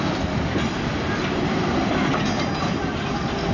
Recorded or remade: recorded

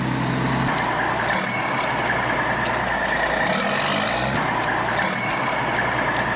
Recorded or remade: recorded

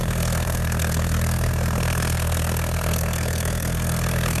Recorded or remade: remade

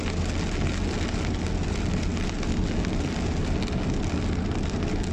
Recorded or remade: recorded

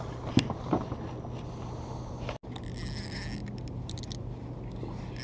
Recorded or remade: recorded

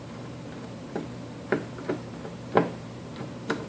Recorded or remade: remade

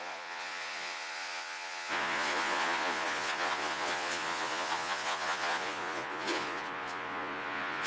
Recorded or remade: remade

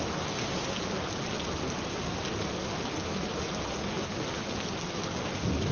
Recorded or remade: recorded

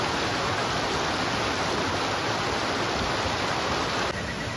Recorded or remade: recorded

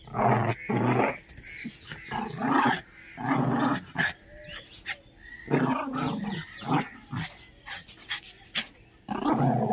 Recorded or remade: recorded